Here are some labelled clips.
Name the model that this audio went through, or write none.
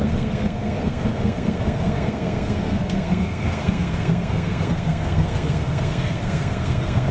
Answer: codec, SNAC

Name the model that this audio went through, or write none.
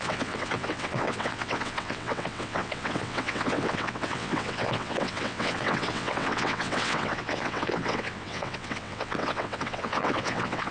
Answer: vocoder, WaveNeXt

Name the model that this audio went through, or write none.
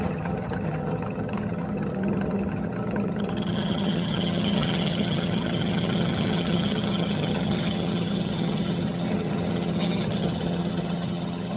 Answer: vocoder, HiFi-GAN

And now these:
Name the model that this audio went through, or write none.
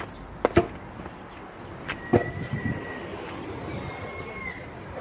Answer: none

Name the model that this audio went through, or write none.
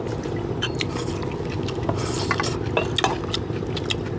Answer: none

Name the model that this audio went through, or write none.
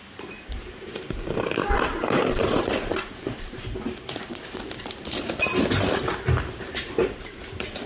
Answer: vocoder, BigVGAN v2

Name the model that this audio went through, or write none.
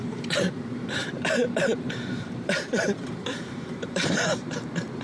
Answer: vocoder, BigVGAN v2